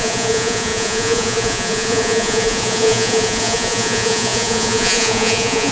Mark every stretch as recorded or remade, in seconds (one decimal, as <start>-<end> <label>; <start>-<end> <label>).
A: 0.0-5.7 remade